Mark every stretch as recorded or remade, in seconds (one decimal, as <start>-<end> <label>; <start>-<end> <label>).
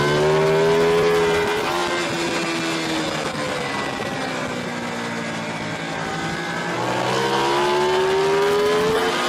0.0-9.3 recorded